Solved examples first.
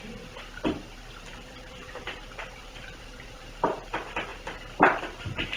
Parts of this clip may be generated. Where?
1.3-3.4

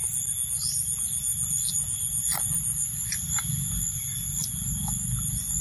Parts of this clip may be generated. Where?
none

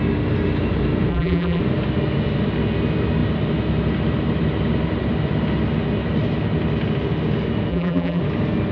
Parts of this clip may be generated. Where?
1.1-1.6; 7.7-8.2

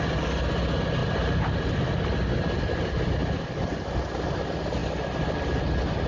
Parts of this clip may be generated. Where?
1.0-1.7

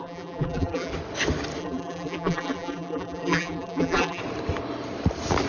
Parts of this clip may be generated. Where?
0.0-0.9; 1.6-4.2

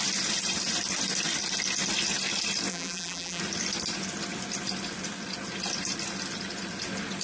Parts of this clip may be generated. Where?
2.7-3.4